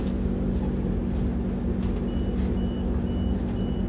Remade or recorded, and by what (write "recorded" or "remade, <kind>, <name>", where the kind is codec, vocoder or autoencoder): recorded